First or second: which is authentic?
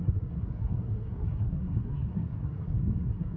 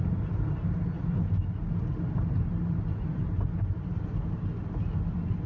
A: second